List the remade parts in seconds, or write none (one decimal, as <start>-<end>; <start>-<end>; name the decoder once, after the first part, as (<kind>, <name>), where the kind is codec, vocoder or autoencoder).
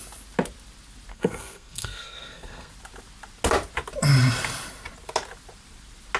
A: 1.1-2.7 (codec, SNAC)